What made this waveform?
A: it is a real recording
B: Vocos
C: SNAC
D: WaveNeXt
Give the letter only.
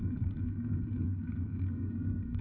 C